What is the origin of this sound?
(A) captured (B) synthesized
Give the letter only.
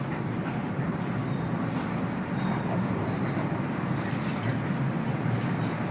A